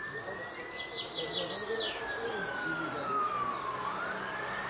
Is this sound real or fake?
real